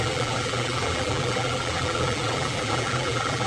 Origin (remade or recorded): remade